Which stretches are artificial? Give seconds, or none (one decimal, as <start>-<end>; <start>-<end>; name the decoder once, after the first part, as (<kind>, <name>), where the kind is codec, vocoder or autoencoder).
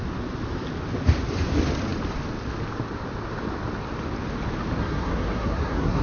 4.8-6.0 (codec, SNAC)